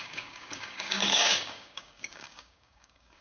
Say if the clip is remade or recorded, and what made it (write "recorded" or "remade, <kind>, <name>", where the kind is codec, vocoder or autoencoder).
remade, codec, DAC